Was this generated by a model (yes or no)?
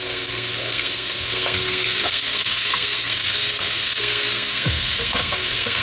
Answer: yes